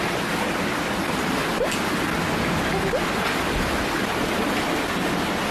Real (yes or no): yes